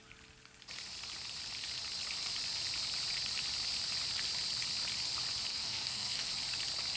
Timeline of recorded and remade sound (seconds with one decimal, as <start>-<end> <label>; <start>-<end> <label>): 0.0-5.5 recorded; 5.5-6.3 remade; 6.3-7.0 recorded